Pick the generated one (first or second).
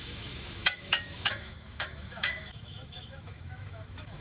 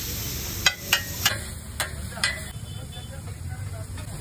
first